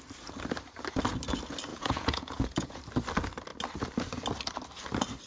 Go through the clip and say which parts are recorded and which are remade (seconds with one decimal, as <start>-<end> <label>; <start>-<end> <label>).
0.0-1.7 recorded; 1.7-2.8 remade; 2.8-5.3 recorded